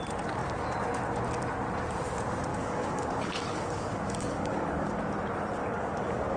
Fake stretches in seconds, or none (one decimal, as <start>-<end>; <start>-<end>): 2.5-5.0; 5.6-6.4